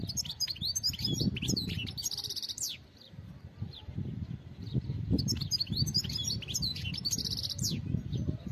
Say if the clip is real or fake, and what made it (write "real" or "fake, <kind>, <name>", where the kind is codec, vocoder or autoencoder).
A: fake, vocoder, BigVGAN v2